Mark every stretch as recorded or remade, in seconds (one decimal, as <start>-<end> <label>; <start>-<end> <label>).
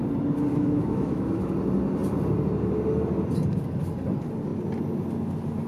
0.0-0.5 recorded; 0.5-1.5 remade; 1.5-5.7 recorded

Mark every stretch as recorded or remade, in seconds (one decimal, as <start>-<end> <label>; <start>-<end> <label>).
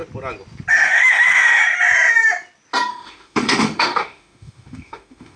0.0-0.7 recorded; 0.7-1.6 remade; 1.6-2.9 recorded; 2.9-5.4 remade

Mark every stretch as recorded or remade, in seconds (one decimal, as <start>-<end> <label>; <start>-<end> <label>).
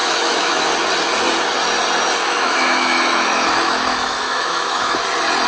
0.0-0.7 remade; 0.7-2.2 recorded; 2.2-5.0 remade; 5.0-5.5 recorded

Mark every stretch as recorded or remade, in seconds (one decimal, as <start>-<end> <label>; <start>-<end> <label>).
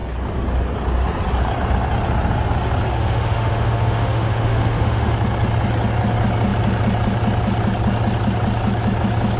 0.0-2.9 recorded; 2.9-5.1 remade; 5.1-9.4 recorded